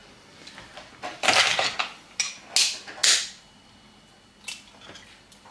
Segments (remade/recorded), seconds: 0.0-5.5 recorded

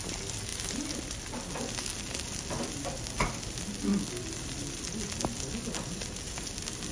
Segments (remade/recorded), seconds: 0.0-6.9 recorded

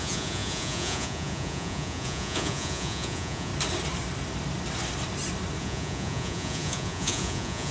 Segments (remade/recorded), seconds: 0.0-3.5 remade; 3.5-5.6 recorded; 5.6-7.7 remade

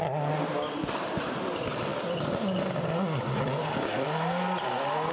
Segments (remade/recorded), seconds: 0.0-5.1 recorded